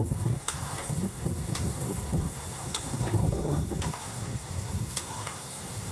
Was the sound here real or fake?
fake